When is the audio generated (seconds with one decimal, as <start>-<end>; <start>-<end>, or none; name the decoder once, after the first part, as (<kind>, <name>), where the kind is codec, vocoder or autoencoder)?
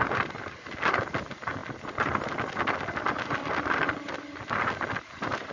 none